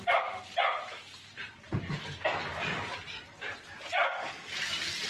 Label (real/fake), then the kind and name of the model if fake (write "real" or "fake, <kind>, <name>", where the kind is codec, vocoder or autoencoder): real